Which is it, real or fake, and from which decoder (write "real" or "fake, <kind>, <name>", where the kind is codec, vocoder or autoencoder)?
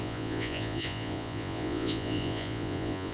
fake, vocoder, Vocos